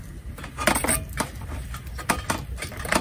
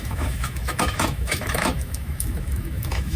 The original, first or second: first